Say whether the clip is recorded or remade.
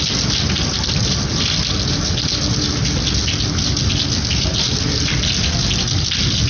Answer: recorded